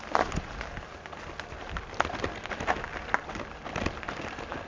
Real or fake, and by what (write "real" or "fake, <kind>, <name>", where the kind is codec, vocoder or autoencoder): real